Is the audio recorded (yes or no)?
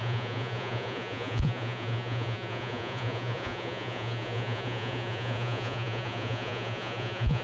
no